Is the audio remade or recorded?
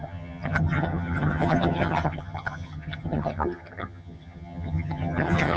remade